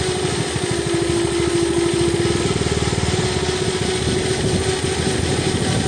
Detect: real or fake real